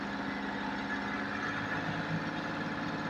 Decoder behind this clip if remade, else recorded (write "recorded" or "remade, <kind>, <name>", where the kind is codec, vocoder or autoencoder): recorded